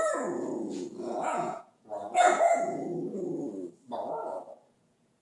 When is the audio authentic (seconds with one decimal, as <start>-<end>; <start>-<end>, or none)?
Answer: 2.9-4.1